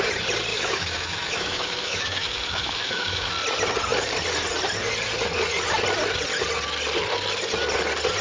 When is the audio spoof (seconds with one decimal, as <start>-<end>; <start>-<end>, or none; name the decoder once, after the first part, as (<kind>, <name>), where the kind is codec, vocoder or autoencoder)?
0.5-3.3 (autoencoder, DAC-VAE)